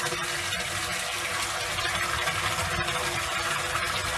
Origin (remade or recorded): recorded